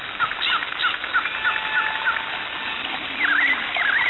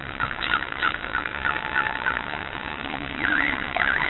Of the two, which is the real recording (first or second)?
first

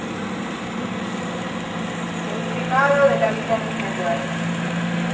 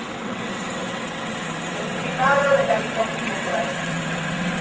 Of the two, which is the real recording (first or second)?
first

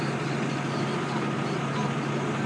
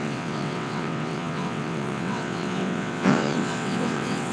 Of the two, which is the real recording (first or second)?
first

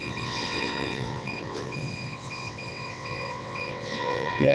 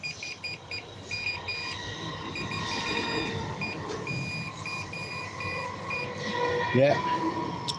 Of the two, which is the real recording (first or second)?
second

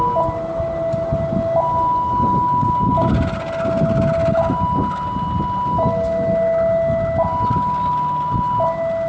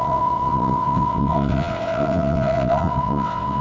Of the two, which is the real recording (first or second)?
first